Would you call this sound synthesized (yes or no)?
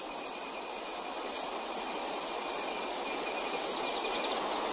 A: no